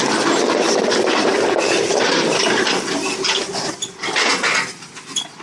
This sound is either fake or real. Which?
real